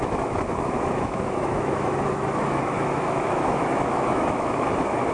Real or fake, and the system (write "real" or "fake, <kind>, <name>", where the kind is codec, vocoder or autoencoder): fake, autoencoder, DAC-VAE